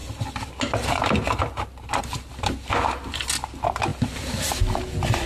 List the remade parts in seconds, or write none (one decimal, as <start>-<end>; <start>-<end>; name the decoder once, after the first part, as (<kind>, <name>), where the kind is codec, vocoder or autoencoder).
none